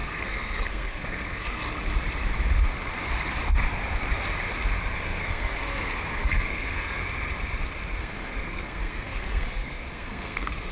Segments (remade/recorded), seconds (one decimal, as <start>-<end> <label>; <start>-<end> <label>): 0.0-1.6 remade; 1.6-4.9 recorded; 4.9-7.0 remade; 7.0-8.0 recorded; 8.0-10.7 remade